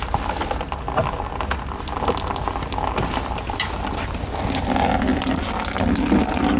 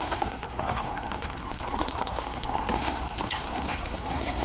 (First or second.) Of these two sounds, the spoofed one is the second